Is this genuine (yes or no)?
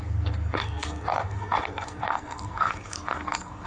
no